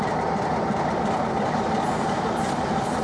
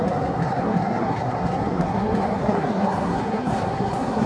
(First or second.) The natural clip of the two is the first